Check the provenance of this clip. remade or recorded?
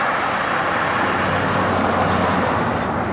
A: recorded